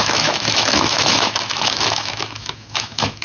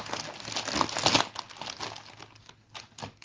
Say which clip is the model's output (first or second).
first